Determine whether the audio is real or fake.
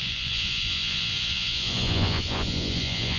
fake